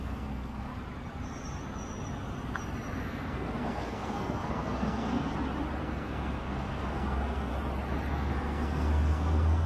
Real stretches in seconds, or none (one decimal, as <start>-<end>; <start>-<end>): 0.7-3.0; 5.3-5.8; 7.5-8.1